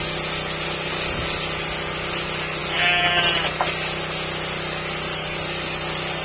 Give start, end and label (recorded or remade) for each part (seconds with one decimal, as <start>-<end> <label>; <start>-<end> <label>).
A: 0.0-6.2 recorded